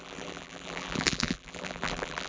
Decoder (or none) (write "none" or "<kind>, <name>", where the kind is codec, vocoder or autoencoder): vocoder, BigVGAN v2